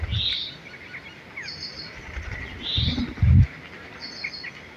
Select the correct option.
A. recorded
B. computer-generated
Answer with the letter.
A